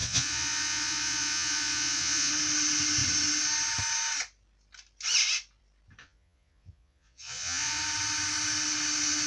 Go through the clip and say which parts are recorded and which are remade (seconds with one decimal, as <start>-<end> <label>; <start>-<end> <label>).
0.0-2.3 remade; 2.3-6.0 recorded; 6.0-7.8 remade; 7.8-9.3 recorded